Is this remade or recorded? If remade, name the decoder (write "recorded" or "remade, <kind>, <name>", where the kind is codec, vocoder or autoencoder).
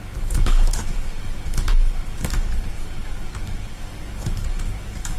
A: remade, codec, DAC